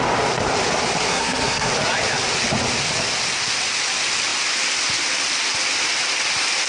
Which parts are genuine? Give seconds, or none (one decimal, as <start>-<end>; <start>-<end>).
0.0-1.1; 1.7-6.7